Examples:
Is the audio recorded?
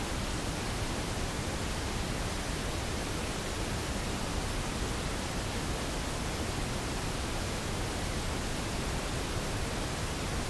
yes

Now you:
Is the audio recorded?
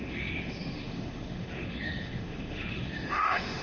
no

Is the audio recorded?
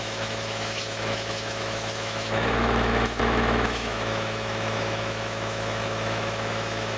no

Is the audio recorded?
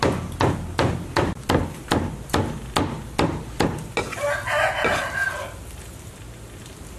yes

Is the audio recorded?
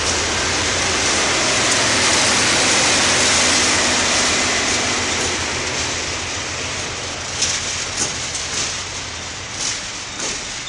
yes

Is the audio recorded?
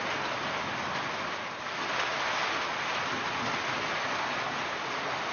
yes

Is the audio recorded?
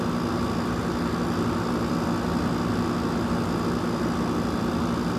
yes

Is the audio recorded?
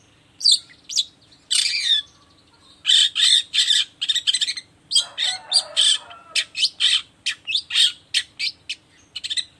yes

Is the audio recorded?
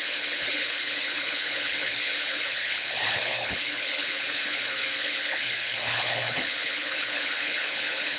no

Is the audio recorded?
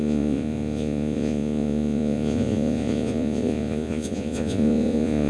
no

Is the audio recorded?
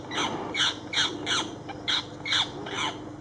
yes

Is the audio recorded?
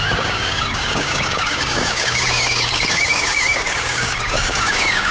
no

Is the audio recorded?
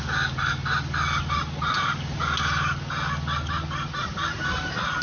yes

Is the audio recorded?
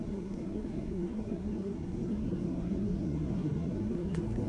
no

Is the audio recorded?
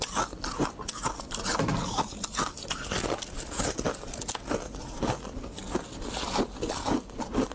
yes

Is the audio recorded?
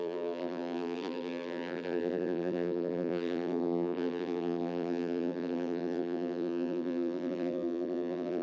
no